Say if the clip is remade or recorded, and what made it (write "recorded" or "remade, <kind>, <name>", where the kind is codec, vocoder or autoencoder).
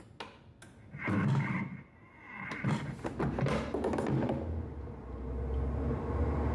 recorded